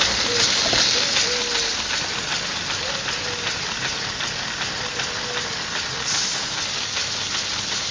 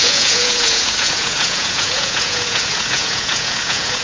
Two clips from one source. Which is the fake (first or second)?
second